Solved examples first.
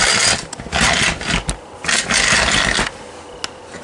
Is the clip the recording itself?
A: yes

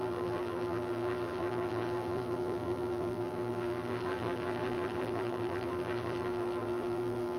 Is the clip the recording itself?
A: no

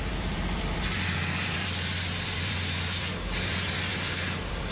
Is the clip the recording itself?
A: no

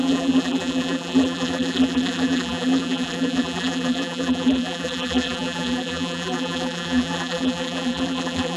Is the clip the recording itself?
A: no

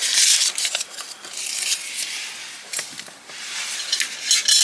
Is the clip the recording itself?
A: yes